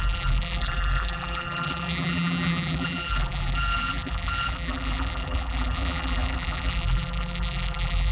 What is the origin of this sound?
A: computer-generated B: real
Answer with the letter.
A